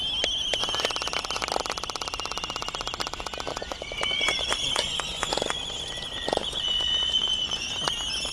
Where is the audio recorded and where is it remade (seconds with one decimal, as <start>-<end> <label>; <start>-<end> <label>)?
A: 0.0-3.5 recorded; 3.5-7.7 remade; 7.7-8.3 recorded